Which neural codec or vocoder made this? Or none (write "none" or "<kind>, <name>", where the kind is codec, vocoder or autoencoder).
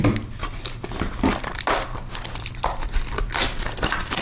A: none